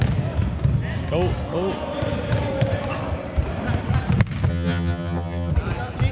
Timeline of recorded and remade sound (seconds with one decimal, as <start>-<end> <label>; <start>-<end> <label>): 0.0-4.5 recorded; 4.5-5.5 remade; 5.5-6.1 recorded